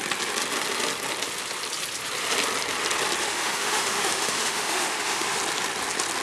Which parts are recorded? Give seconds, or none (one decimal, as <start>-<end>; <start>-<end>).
0.0-3.2; 5.4-6.2